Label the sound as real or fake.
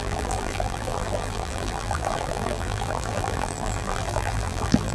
fake